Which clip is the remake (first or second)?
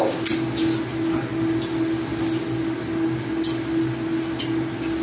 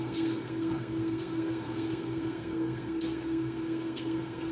second